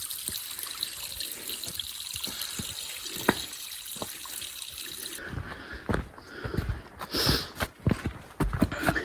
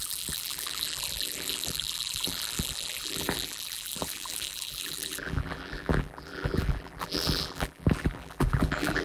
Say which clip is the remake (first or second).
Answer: second